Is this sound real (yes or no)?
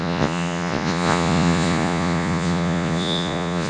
no